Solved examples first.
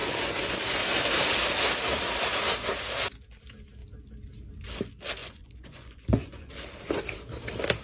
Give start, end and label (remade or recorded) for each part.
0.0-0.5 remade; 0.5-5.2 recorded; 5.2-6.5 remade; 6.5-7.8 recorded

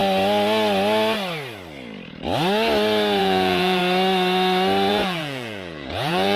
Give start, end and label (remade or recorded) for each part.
0.0-3.2 recorded; 3.2-3.8 remade; 3.8-4.9 recorded; 4.9-6.4 remade

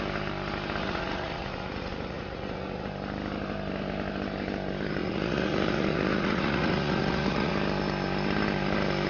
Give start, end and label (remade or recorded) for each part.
0.0-0.8 recorded; 0.8-2.9 remade; 2.9-5.0 recorded; 5.0-7.5 remade; 7.5-9.1 recorded

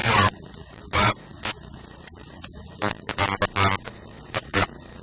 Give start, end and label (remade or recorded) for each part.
0.0-3.2 remade; 3.2-3.9 recorded; 3.9-5.0 remade

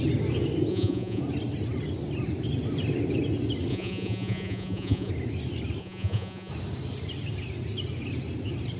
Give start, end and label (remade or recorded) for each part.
0.0-0.7 recorded; 0.7-1.2 remade; 1.2-3.7 recorded; 3.7-5.1 remade; 5.1-5.8 recorded; 5.8-6.5 remade; 6.5-8.8 recorded